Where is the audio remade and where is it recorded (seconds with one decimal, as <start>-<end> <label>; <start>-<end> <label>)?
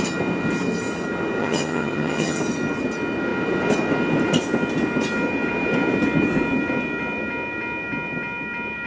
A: 0.0-1.4 recorded; 1.4-2.4 remade; 2.4-8.9 recorded